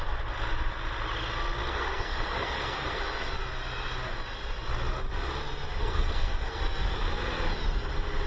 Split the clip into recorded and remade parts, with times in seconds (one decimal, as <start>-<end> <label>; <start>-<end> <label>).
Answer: 0.0-1.7 recorded; 1.7-3.0 remade; 3.0-5.8 recorded; 5.8-6.6 remade; 6.6-8.3 recorded